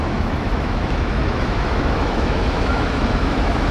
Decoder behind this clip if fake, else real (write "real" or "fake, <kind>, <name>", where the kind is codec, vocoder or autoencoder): fake, autoencoder, DAC-VAE